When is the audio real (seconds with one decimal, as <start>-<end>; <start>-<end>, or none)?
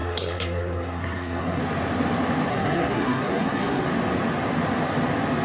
1.6-2.5; 3.8-5.4